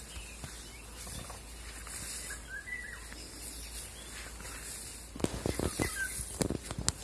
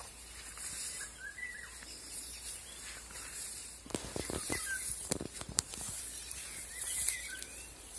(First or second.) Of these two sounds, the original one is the first